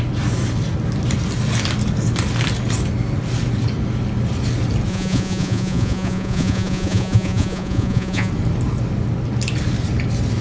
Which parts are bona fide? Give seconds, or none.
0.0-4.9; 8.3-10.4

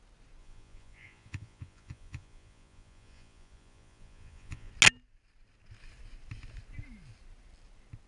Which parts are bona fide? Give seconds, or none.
0.0-0.4; 4.7-8.1

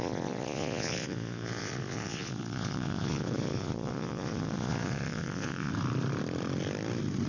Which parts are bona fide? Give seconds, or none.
5.7-7.3

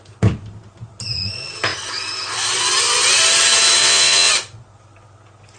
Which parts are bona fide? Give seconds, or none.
0.0-3.8; 4.3-5.6